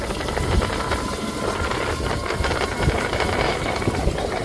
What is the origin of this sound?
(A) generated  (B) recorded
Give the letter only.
B